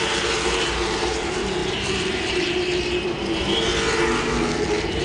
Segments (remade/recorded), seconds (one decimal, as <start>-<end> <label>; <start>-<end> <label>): 0.0-3.7 remade; 3.7-4.2 recorded; 4.2-5.0 remade